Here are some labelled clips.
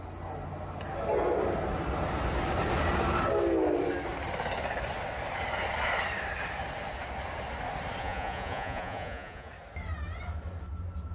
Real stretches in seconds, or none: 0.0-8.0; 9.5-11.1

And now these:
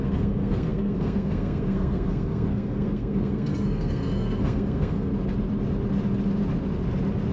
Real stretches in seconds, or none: 5.1-7.3

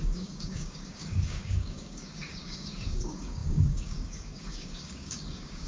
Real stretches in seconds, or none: none

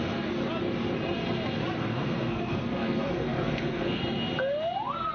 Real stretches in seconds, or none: 0.0-1.8; 4.0-5.1